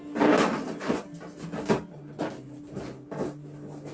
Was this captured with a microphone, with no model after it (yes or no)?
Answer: yes